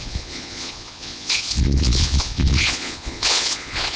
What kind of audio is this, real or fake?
fake